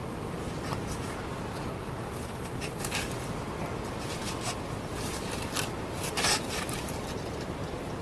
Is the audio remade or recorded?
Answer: recorded